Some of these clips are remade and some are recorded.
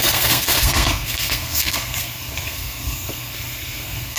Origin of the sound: remade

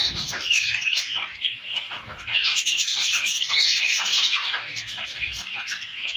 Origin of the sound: remade